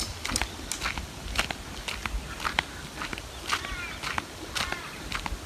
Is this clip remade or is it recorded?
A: recorded